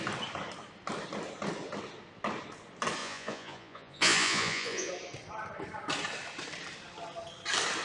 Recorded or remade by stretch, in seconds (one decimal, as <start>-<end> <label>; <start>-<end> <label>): 0.0-3.0 recorded; 3.0-4.9 remade; 4.9-7.8 recorded